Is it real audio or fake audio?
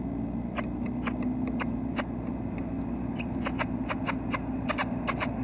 real